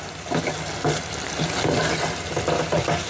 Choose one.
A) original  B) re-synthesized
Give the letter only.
A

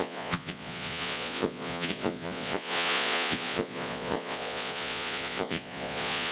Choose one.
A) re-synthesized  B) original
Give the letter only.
A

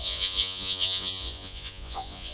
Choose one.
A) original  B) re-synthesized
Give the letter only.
B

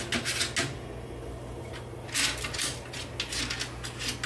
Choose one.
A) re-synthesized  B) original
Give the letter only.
B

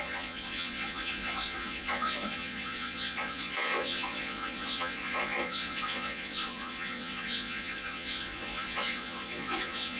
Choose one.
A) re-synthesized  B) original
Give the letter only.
A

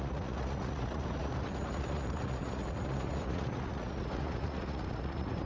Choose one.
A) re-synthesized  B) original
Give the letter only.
A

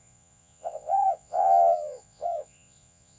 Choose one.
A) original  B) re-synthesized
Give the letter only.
B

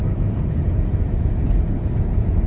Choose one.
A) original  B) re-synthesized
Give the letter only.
B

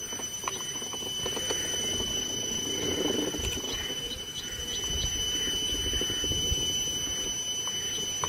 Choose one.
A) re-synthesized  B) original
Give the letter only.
B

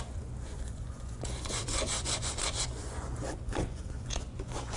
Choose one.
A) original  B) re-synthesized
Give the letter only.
B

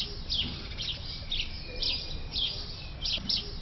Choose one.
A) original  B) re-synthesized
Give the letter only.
A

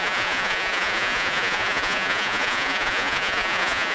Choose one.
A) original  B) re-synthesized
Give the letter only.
B